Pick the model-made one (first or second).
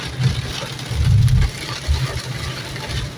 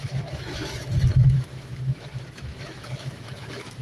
second